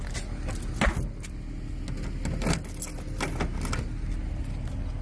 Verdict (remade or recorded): recorded